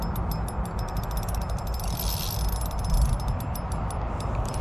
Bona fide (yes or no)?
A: yes